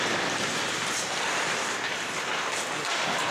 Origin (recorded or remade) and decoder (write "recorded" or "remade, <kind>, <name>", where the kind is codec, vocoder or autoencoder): recorded